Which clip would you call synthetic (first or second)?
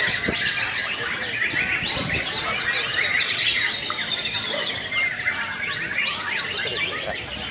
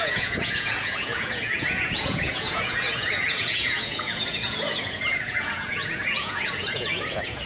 second